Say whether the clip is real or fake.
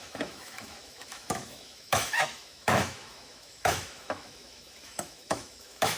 fake